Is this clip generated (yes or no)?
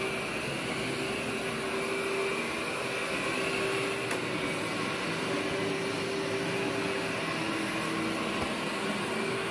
no